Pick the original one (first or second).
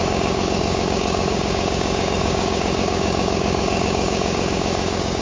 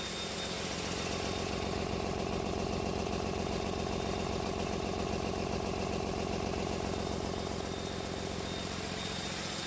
second